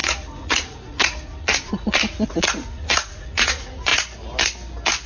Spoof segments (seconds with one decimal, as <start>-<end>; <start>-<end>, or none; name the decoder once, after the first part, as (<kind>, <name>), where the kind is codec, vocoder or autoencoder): 0.0-3.9 (vocoder, Vocos)